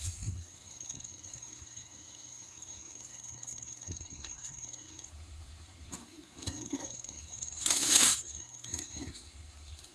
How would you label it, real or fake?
fake